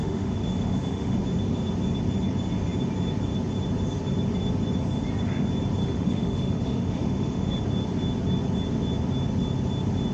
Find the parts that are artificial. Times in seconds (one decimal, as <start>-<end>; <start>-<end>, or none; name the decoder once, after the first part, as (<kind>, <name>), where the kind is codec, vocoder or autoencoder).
0.0-1.2 (autoencoder, DAC-VAE); 5.8-7.6